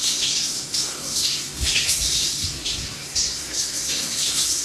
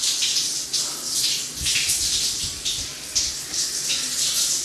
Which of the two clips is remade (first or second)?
first